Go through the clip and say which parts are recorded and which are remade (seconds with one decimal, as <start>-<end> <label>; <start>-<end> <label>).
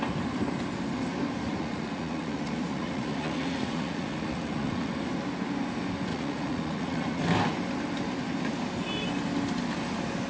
0.0-1.5 recorded; 1.5-4.9 remade; 4.9-6.1 recorded; 6.1-7.2 remade; 7.2-10.3 recorded